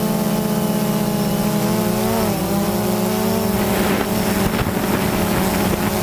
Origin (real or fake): real